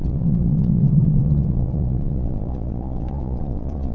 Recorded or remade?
remade